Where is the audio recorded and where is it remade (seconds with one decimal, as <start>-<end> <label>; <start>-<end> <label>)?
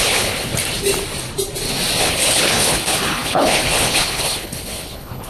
0.0-0.5 remade; 0.5-2.0 recorded; 2.0-5.3 remade